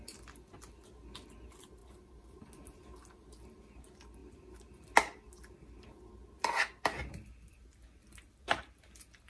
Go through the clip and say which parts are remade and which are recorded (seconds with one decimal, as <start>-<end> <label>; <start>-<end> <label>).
0.0-1.8 recorded; 1.8-2.4 remade; 2.4-9.3 recorded